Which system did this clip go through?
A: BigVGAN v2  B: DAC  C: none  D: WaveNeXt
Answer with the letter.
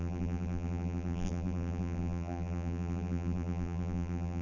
A